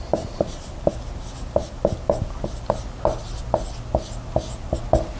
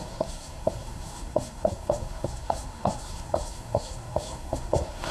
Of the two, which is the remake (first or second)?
second